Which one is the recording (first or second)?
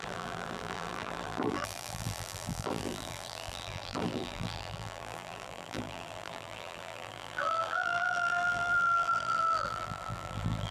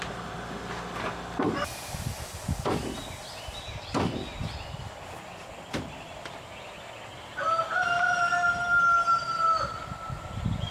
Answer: second